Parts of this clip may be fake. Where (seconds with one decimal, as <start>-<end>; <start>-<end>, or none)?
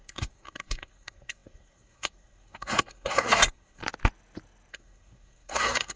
0.0-3.8; 4.7-6.0